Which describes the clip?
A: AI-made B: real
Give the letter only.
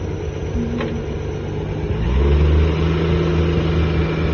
B